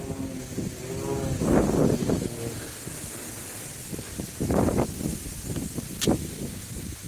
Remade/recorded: recorded